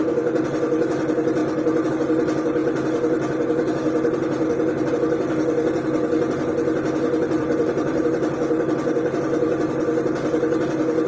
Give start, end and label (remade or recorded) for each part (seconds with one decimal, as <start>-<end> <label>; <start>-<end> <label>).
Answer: 0.0-7.4 recorded; 7.4-8.1 remade; 8.1-11.1 recorded